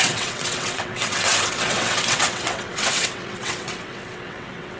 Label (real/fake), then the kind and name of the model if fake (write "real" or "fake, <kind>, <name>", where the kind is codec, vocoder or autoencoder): fake, vocoder, WaveNeXt